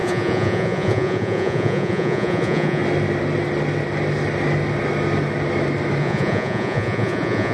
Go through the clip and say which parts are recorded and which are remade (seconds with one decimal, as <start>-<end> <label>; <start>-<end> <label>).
0.0-2.8 remade; 2.8-6.0 recorded; 6.0-7.5 remade